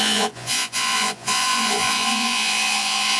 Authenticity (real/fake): fake